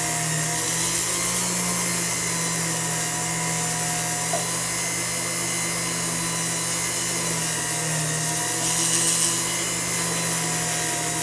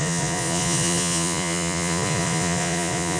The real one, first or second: first